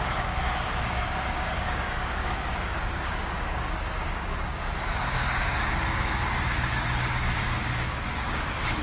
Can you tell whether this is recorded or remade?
remade